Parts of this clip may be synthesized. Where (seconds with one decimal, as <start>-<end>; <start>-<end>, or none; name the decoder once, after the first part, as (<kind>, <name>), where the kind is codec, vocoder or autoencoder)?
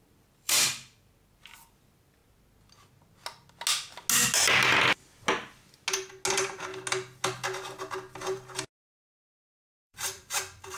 0.0-2.2 (vocoder, BigVGAN v2); 6.3-6.7; 9.6-10.8